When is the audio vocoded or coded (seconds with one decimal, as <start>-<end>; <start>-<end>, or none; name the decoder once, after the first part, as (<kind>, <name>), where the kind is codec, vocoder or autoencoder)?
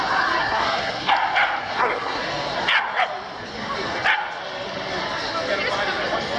0.4-1.1 (codec, SNAC); 1.6-2.2